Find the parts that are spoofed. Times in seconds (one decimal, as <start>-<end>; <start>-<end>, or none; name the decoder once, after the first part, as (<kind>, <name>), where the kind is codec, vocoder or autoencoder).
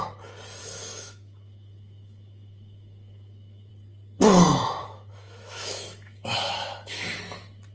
0.6-3.7 (autoencoder, DAC-VAE); 4.8-7.2